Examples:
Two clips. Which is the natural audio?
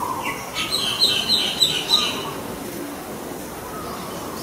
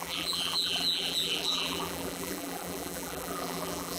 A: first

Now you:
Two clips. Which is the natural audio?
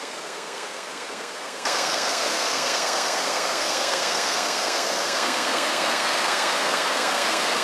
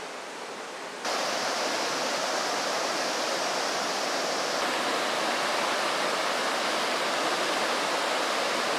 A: second